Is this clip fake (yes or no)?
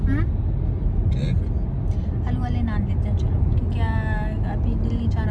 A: no